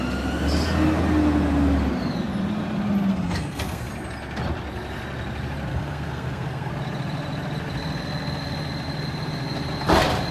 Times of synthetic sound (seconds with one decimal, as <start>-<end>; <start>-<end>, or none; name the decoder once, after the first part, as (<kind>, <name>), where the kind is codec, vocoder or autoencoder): 3.1-3.9 (codec, SNAC); 5.7-6.7